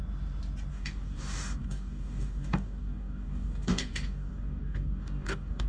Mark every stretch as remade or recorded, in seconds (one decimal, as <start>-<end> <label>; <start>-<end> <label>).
0.0-0.7 recorded; 0.7-5.7 remade